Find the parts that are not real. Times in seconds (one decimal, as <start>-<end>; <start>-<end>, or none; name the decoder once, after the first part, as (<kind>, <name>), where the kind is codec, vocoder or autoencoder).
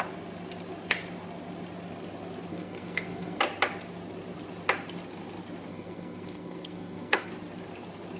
2.5-3.4 (codec, SNAC); 5.7-7.3